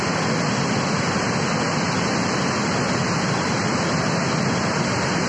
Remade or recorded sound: recorded